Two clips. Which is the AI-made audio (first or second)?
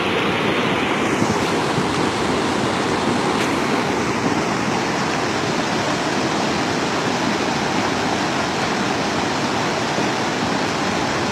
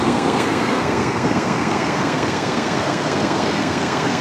second